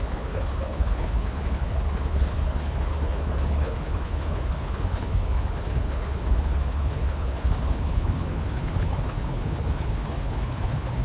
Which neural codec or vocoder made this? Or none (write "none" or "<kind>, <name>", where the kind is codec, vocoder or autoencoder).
codec, HILCodec